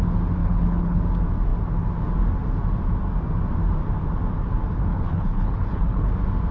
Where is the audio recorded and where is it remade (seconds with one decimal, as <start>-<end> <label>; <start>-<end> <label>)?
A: 0.0-0.4 recorded; 0.4-1.0 remade; 1.0-4.9 recorded; 4.9-6.1 remade; 6.1-6.5 recorded